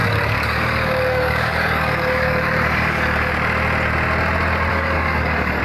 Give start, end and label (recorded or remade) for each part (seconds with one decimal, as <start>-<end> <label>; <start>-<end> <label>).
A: 0.0-3.3 remade; 3.3-4.7 recorded; 4.7-5.6 remade